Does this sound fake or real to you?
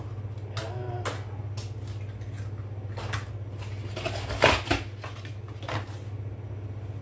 real